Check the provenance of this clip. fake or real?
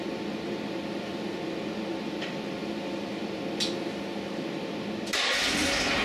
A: real